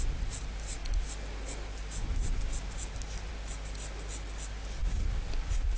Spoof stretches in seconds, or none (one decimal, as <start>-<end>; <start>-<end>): none